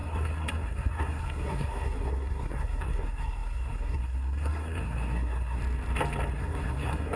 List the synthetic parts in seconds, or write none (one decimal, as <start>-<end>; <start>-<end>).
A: 0.0-5.6; 6.3-7.2